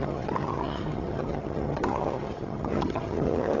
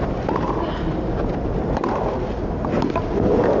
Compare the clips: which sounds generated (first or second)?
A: first